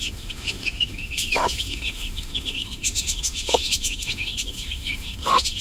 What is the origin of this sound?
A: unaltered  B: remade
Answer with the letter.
B